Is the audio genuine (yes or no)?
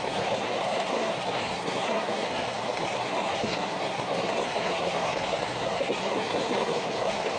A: no